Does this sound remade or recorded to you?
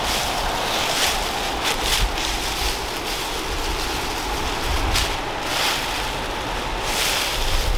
recorded